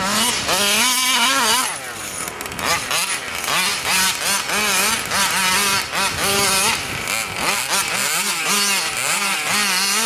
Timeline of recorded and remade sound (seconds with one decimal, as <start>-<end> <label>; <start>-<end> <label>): 0.0-2.0 recorded; 2.0-3.3 remade; 3.3-3.7 recorded; 3.7-4.2 remade; 4.2-6.2 recorded; 6.2-6.9 remade; 6.9-10.1 recorded